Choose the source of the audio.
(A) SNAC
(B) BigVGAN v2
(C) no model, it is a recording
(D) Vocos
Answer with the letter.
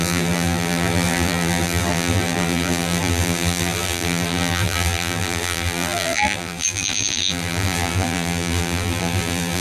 B